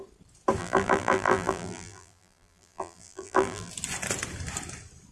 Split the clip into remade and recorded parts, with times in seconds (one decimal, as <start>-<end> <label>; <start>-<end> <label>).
0.0-0.6 recorded; 0.6-3.7 remade; 3.7-5.1 recorded